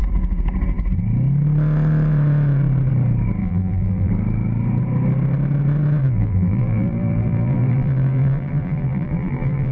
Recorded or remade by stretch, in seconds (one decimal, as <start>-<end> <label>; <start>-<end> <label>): 0.0-3.4 recorded; 3.4-4.1 remade; 4.1-6.0 recorded; 6.0-9.7 remade